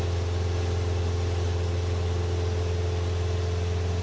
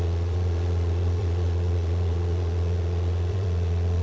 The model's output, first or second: second